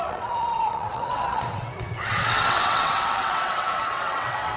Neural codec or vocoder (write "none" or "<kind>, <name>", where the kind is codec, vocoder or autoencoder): vocoder, WaveNeXt